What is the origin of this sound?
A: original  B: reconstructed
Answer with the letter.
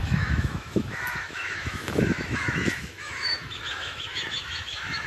B